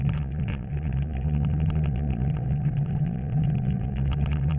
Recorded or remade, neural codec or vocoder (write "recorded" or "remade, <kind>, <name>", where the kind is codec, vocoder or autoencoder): remade, vocoder, Vocos